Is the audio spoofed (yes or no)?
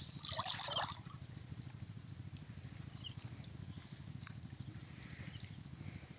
no